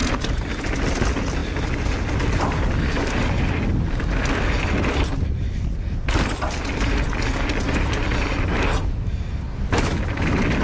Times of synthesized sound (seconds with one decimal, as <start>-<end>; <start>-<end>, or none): none